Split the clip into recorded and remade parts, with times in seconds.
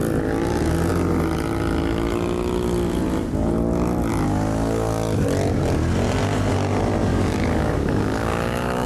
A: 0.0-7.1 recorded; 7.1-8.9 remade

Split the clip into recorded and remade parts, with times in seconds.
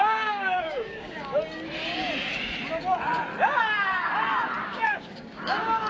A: 0.0-1.3 remade; 1.3-4.6 recorded; 4.6-5.9 remade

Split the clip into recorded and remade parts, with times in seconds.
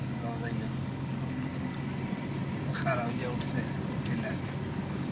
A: 0.0-1.5 remade; 1.5-4.6 recorded; 4.6-5.1 remade